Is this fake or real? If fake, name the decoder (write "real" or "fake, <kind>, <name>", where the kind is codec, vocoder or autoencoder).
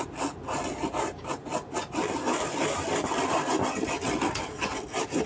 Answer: real